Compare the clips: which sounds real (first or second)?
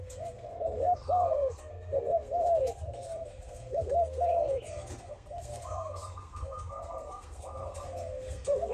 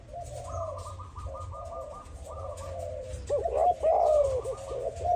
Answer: second